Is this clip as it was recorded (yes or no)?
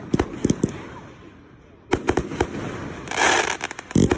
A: yes